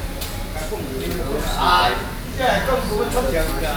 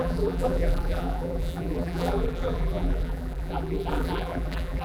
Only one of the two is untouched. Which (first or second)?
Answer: first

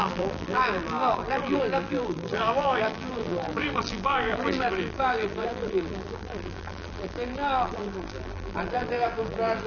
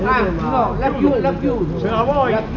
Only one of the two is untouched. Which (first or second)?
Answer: second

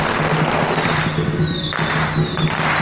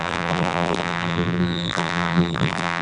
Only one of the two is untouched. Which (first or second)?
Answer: first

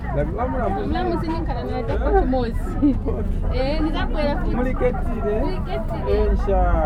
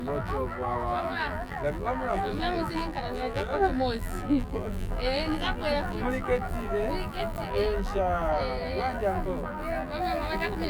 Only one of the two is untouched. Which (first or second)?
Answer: first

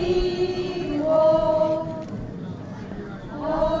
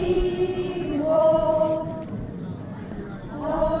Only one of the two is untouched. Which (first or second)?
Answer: first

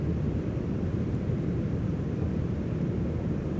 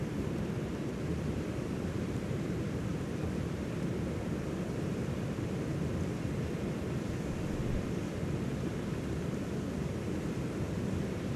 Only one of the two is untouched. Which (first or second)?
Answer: first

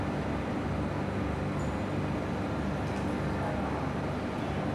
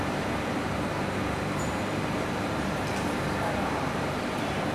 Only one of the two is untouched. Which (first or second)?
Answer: first